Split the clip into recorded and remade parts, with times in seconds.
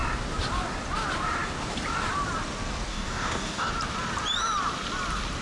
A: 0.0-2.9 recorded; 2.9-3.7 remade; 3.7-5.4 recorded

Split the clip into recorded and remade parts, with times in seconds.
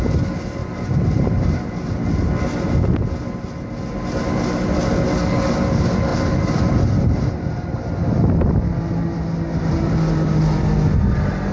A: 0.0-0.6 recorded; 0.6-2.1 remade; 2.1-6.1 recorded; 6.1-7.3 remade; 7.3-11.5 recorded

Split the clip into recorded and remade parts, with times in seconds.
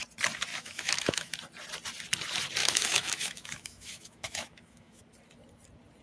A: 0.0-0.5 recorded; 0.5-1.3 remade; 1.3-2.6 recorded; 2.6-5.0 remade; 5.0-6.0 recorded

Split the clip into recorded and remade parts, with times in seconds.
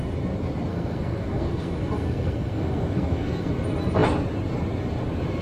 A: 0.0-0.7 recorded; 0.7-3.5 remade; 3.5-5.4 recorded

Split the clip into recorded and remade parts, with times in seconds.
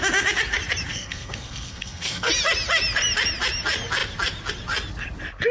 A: 0.0-0.9 recorded; 0.9-2.3 remade; 2.3-5.5 recorded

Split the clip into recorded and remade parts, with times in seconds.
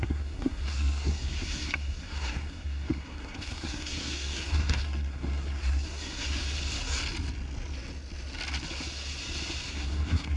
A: 0.0-6.4 remade; 6.4-9.7 recorded; 9.7-10.4 remade